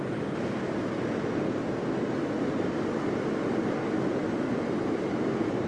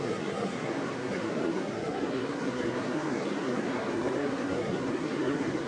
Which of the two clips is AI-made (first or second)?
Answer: second